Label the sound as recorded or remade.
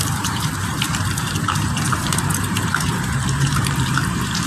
remade